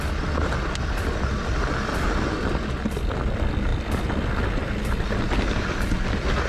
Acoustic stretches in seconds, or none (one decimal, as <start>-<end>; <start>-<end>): 0.0-3.7; 4.3-6.5